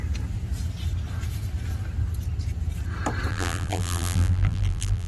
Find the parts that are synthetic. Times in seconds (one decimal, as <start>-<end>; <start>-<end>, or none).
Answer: 3.3-5.1